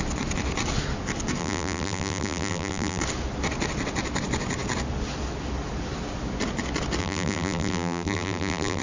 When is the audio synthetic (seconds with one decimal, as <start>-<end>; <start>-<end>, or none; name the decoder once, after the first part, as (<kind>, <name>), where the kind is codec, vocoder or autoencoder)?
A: 1.4-3.0 (vocoder, BigVGAN v2); 7.0-8.8